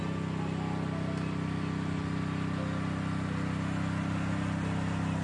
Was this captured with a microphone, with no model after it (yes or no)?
yes